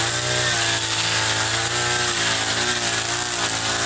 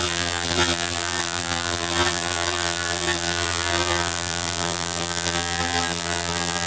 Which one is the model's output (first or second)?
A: second